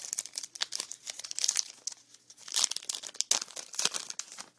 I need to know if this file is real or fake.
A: real